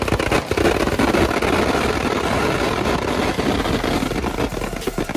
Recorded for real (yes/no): yes